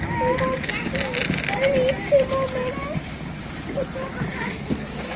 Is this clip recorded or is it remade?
recorded